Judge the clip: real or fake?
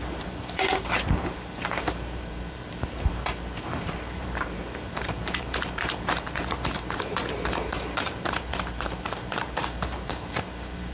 fake